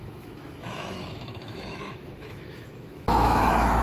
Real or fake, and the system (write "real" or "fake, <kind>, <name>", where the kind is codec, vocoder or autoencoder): fake, autoencoder, DAC-VAE